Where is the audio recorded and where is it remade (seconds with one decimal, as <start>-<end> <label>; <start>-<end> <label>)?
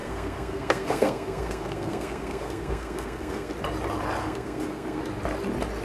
0.0-3.5 remade; 3.5-4.2 recorded; 4.2-5.0 remade; 5.0-5.8 recorded